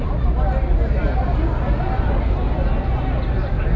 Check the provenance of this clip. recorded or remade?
recorded